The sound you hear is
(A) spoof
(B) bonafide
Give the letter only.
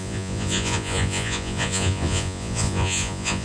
A